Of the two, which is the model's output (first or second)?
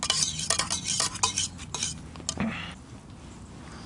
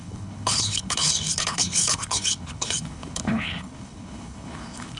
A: second